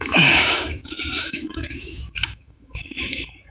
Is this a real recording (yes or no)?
no